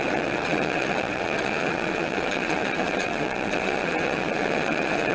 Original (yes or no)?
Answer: no